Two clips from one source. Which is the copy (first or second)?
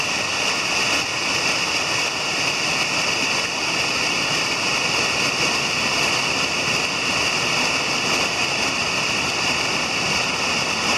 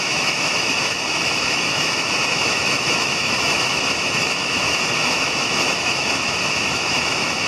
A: second